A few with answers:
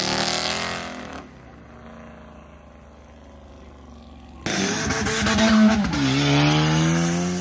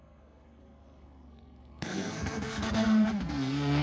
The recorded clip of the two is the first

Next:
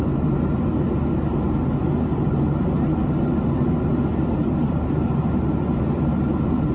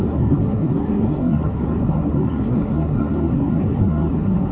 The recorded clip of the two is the first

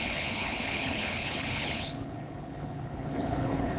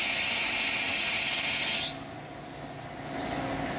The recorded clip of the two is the second